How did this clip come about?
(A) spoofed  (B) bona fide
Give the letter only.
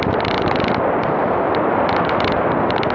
B